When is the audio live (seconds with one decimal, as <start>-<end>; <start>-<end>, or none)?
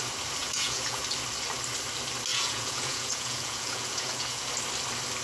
0.0-0.4; 1.0-2.3; 4.5-5.2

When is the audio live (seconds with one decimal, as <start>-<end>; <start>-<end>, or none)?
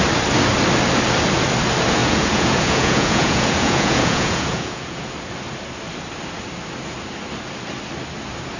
0.0-2.0; 5.1-8.6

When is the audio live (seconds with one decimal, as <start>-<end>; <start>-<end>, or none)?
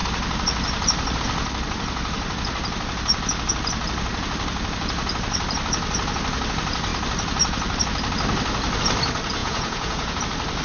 0.0-9.4; 10.2-10.6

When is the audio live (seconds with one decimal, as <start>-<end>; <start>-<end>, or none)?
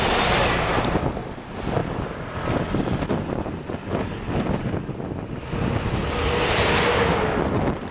0.0-7.9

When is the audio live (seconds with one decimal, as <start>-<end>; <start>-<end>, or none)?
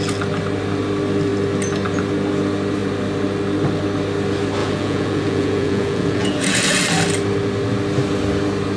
0.0-4.6; 6.8-8.8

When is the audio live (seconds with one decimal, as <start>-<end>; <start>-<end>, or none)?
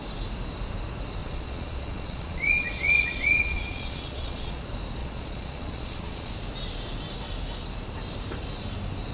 0.0-1.2; 4.6-5.0; 6.3-9.1